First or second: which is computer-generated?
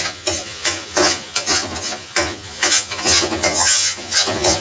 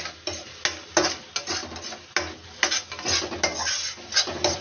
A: first